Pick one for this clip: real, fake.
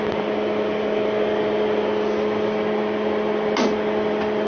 real